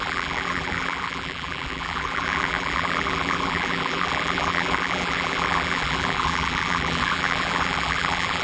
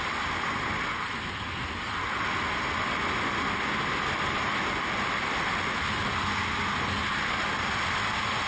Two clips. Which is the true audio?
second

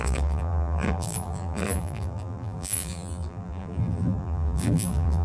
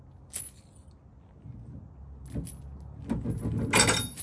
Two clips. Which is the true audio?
second